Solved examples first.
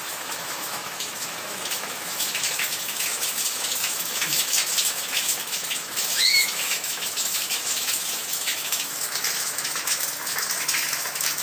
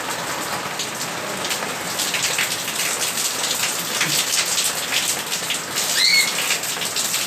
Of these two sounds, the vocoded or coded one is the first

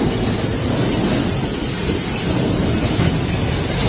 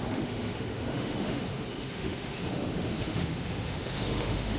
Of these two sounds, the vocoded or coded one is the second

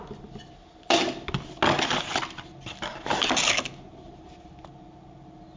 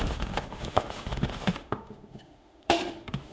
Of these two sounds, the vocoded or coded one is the second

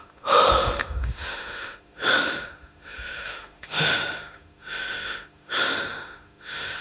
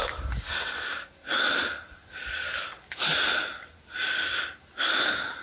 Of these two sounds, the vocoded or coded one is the first